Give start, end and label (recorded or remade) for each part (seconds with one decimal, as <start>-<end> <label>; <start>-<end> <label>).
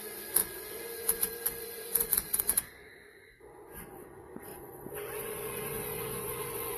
0.0-6.8 remade